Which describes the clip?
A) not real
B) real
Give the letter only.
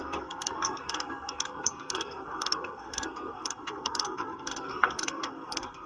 A